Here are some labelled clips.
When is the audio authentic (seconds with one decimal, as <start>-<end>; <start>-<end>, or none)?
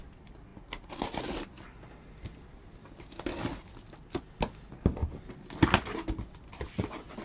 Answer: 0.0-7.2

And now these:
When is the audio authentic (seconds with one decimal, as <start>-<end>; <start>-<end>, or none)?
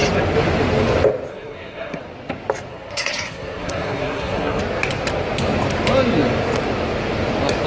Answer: 0.0-1.3; 2.0-2.7; 4.6-7.7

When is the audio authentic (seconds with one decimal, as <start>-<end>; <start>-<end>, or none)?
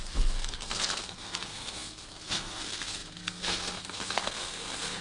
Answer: none